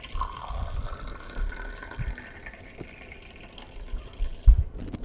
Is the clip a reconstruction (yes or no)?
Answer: no